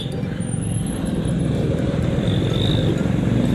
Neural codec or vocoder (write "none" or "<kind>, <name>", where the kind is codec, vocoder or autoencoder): none